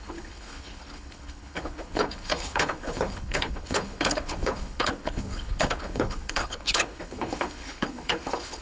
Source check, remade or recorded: remade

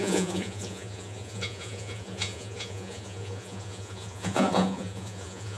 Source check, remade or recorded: remade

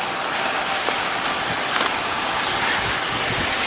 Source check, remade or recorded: recorded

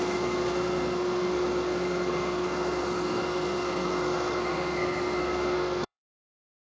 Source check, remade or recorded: remade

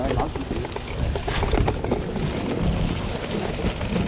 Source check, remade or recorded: recorded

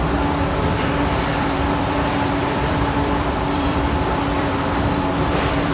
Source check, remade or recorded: remade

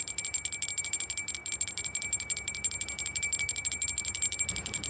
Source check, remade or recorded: recorded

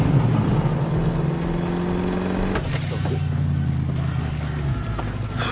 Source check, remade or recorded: recorded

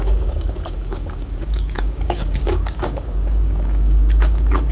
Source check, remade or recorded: remade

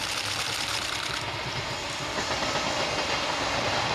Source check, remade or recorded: recorded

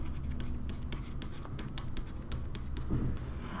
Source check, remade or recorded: recorded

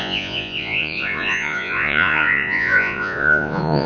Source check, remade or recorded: remade